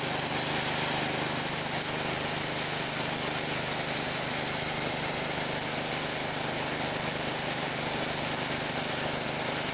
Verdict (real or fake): real